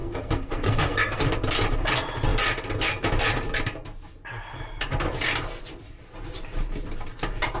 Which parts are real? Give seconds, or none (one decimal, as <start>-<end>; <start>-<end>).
1.2-7.6

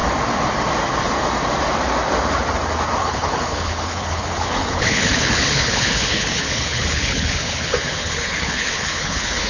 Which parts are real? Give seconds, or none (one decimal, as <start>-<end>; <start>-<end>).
0.0-3.0

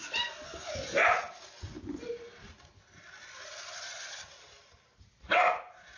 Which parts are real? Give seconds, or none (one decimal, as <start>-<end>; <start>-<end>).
0.0-6.0

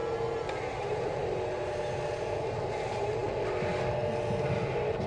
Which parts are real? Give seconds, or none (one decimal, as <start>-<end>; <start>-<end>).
0.0-5.1

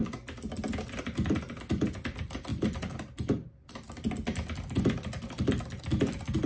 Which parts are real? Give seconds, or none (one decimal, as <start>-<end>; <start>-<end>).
0.0-6.5

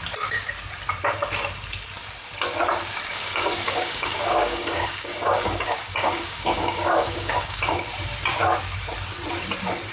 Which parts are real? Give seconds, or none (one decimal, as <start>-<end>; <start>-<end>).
0.0-3.1; 7.8-9.9

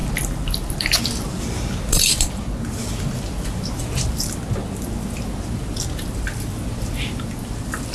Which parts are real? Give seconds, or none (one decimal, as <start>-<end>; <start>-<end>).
0.0-7.9

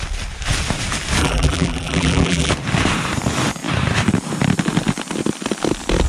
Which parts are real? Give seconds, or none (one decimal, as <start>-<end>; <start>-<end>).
0.0-1.2; 2.5-6.1